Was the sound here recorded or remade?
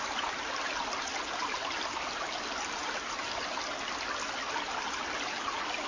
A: recorded